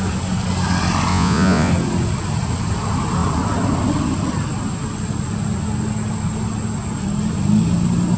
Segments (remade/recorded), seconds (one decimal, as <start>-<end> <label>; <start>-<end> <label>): 0.0-1.1 recorded; 1.1-1.7 remade; 1.7-8.2 recorded